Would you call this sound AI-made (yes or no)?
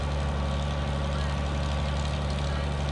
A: no